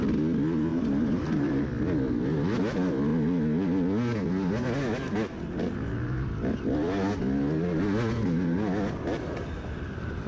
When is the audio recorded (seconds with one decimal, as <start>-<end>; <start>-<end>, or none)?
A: 0.0-0.7; 1.6-10.3